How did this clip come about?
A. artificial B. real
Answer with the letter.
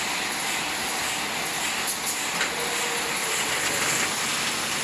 B